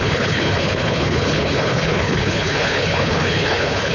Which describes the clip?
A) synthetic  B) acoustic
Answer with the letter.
A